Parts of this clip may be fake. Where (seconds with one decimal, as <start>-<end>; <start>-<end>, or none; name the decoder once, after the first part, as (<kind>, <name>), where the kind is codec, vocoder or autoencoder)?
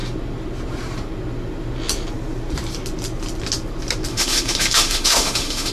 4.1-5.7 (autoencoder, DAC-VAE)